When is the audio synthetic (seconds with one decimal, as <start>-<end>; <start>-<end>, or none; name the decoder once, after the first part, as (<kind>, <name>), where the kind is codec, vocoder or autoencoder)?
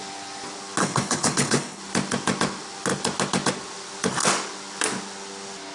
0.8-1.8 (codec, HILCodec)